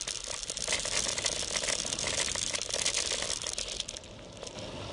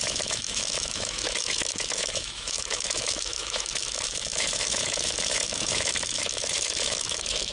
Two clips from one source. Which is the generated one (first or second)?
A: second